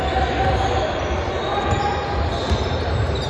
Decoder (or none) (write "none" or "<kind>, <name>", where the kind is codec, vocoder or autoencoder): none